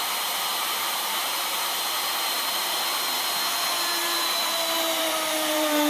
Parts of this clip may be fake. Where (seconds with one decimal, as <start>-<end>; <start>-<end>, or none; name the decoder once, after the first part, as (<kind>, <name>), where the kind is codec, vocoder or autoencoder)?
0.5-3.1 (vocoder, BigVGAN v2); 4.0-5.9